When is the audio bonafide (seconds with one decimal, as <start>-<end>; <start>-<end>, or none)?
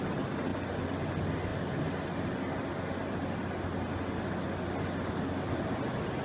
0.0-0.5; 1.0-6.2